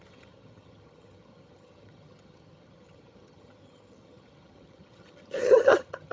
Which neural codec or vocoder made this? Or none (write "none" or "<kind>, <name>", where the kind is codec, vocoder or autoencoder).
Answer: vocoder, HiFi-GAN